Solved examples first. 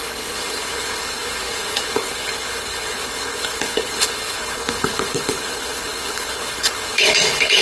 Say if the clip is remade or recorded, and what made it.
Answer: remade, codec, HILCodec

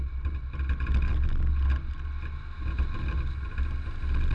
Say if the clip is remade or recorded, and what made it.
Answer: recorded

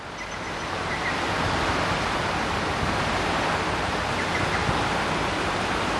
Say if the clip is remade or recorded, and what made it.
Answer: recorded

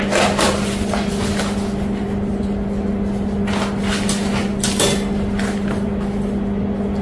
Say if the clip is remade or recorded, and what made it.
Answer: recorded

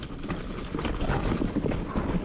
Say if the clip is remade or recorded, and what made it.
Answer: recorded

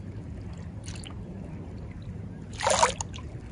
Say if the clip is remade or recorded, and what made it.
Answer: recorded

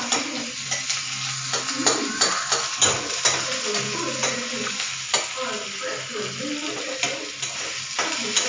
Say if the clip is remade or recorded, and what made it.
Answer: recorded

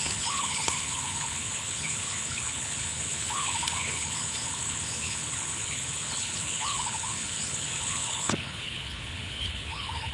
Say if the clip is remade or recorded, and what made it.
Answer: remade, codec, HILCodec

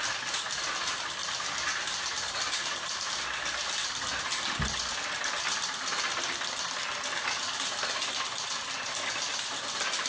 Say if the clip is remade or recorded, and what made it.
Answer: recorded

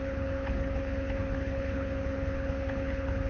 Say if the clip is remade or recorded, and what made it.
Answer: remade, codec, HILCodec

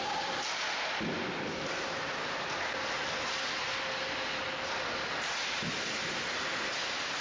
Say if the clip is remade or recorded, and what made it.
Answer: recorded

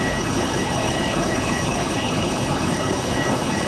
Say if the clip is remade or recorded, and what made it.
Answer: remade, codec, HILCodec